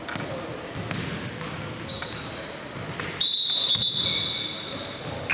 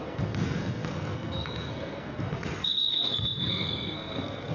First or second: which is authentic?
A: first